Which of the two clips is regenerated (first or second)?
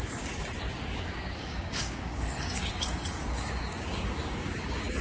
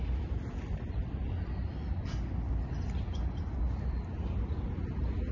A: first